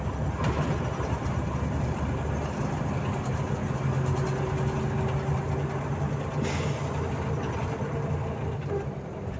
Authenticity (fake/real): real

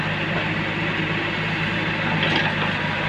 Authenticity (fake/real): real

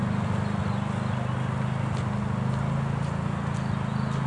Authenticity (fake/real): real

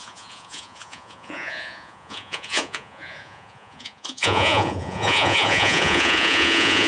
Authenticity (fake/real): fake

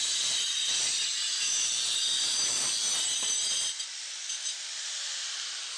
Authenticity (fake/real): real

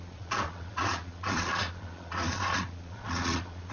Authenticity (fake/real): fake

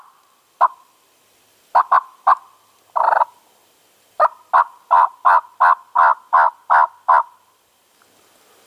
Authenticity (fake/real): real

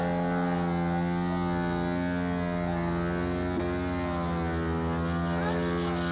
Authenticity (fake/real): real